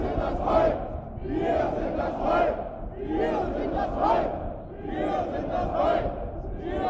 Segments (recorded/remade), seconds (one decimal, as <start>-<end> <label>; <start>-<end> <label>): 0.0-6.9 recorded